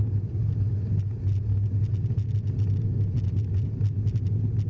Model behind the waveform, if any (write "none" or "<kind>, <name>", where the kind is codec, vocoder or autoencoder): none